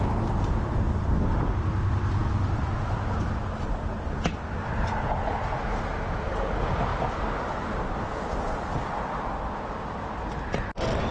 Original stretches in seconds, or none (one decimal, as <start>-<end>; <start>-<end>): 0.0-11.1